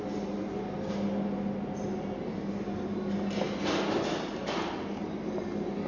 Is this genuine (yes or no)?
yes